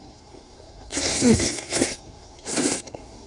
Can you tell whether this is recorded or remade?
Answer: remade